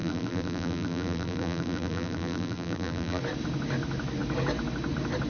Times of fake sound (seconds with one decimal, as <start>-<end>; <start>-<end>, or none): 0.0-3.2